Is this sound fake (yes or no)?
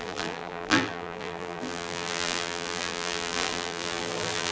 yes